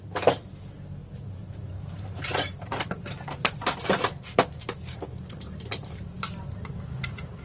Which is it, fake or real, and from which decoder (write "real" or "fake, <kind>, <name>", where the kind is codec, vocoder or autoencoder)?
fake, vocoder, BigVGAN v2